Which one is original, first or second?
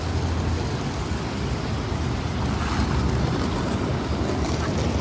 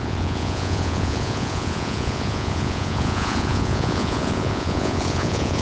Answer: first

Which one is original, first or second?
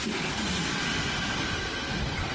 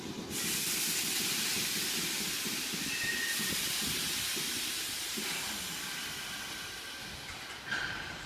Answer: first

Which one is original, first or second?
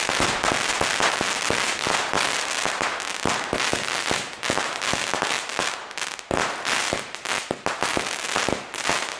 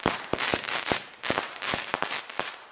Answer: first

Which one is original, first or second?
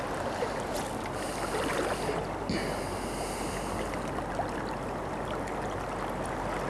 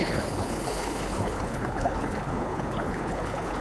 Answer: first